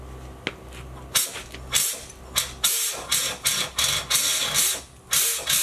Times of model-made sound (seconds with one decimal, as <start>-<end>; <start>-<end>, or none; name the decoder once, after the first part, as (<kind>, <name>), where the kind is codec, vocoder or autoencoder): none